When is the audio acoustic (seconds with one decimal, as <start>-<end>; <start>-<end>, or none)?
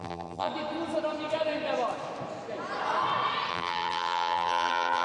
0.5-3.5